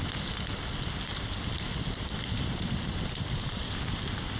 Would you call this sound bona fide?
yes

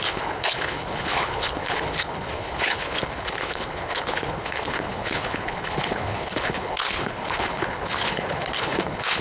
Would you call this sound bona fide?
no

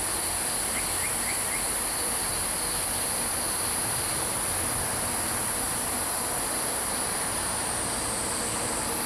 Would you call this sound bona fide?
yes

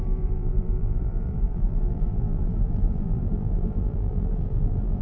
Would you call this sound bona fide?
no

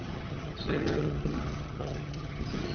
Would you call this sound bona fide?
no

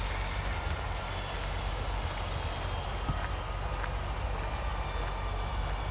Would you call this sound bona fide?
yes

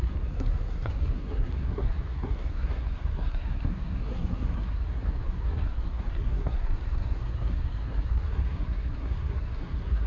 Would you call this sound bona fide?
no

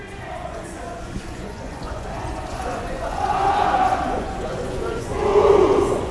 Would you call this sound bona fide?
no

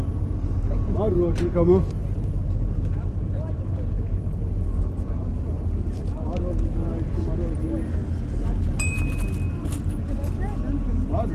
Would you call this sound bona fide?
yes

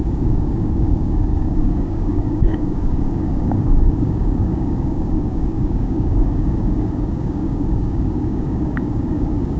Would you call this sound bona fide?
no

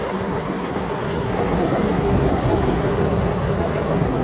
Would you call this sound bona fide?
no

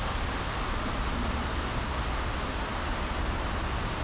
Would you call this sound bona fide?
no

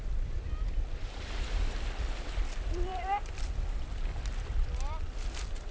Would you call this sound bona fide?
no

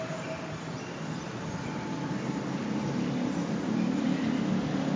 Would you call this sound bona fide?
yes